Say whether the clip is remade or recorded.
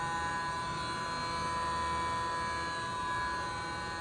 recorded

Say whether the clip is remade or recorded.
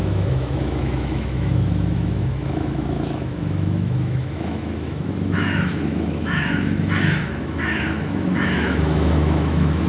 remade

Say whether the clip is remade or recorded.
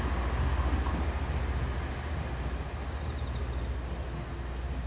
recorded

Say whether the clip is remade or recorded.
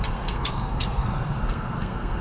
remade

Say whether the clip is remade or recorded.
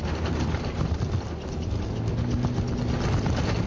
recorded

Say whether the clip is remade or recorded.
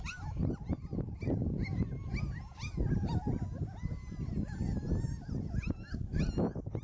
recorded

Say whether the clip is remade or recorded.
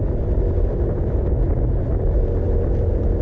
recorded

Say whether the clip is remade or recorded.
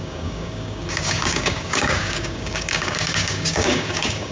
remade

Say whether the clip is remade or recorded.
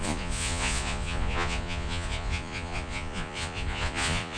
remade